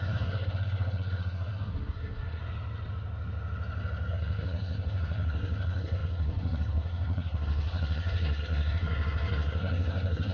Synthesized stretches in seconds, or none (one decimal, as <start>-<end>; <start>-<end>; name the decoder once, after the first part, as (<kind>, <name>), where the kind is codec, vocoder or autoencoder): 0.0-2.4 (codec, SNAC); 4.1-10.3